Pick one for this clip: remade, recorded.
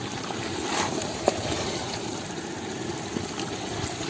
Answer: recorded